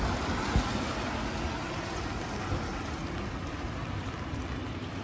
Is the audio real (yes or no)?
yes